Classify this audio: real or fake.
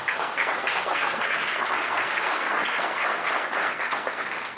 fake